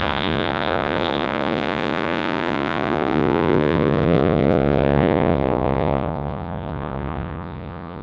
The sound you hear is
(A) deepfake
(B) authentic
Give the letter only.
A